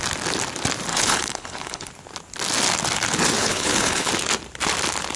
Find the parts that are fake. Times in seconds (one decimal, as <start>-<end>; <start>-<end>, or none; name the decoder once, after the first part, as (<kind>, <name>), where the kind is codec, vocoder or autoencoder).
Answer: 0.9-1.9 (codec, HILCodec); 3.4-4.1